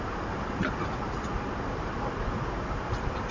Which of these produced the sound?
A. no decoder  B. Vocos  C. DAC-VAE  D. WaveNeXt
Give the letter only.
A